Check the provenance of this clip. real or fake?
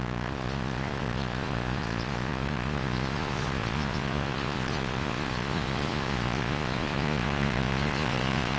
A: fake